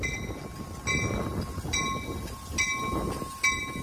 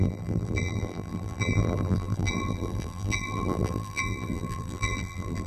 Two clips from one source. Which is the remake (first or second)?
second